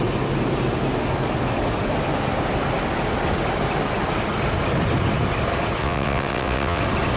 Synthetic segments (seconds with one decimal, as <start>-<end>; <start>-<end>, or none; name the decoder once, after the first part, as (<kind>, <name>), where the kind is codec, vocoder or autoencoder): 5.8-6.8 (vocoder, WaveNeXt)